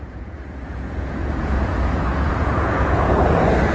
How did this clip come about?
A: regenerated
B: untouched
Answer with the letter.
A